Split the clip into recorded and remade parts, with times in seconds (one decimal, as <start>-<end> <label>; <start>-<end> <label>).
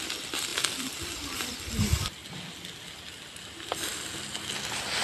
0.0-5.0 recorded